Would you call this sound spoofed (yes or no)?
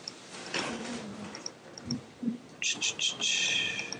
yes